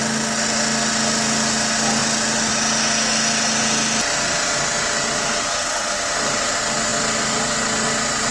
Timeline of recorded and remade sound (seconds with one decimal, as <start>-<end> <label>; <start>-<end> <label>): 0.0-8.3 recorded